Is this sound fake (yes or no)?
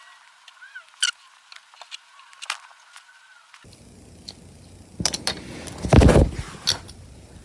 no